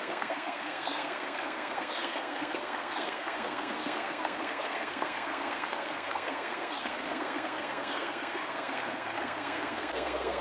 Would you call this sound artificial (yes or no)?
yes